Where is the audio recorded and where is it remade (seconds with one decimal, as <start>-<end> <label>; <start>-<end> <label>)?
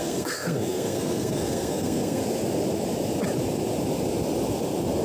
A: 0.0-2.2 remade; 2.2-5.0 recorded